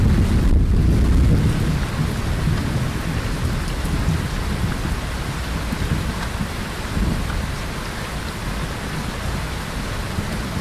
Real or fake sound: real